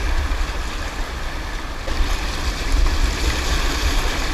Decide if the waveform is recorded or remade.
recorded